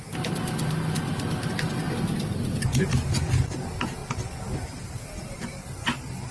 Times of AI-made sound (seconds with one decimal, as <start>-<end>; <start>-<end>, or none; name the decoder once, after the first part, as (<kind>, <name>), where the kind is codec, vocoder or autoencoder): none